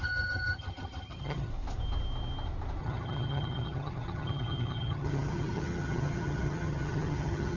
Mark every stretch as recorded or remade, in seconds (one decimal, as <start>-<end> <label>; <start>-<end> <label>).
0.0-1.5 remade; 1.5-2.8 recorded; 2.8-7.6 remade